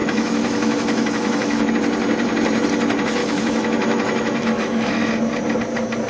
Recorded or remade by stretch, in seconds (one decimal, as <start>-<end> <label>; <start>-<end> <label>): 0.0-1.7 remade; 1.7-3.2 recorded; 3.2-5.1 remade; 5.1-6.1 recorded

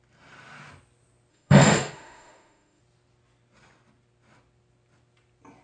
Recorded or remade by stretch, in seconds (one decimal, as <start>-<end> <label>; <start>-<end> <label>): 0.0-1.3 recorded; 1.3-2.8 remade; 2.8-5.6 recorded

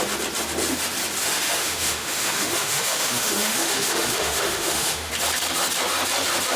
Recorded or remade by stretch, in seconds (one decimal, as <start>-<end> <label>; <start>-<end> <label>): 0.0-1.2 recorded; 1.2-5.1 remade; 5.1-6.6 recorded

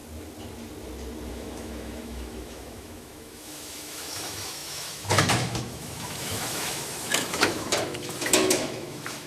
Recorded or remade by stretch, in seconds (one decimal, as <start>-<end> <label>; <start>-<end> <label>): 0.0-1.3 recorded; 1.3-9.3 remade